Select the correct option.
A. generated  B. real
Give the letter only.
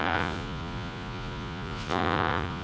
A